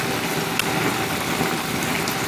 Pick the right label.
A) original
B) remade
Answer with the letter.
A